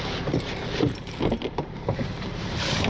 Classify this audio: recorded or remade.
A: remade